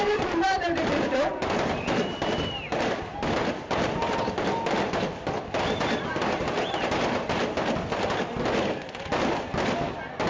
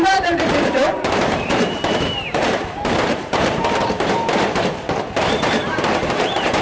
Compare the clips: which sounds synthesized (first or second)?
second